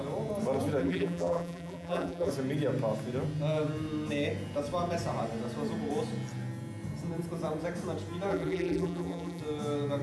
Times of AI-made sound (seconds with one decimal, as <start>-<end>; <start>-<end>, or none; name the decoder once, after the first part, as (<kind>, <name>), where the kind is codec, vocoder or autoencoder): 0.8-2.3 (vocoder, BigVGAN v2); 8.3-9.4